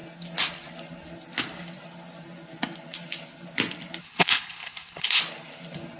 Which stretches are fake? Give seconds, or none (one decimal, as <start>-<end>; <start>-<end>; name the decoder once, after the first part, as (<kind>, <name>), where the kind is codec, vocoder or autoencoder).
4.0-5.2 (codec, HILCodec)